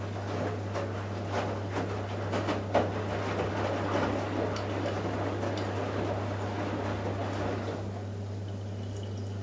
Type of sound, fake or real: real